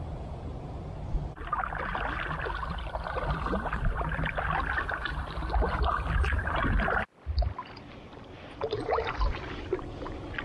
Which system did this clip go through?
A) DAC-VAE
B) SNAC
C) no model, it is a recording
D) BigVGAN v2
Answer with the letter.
C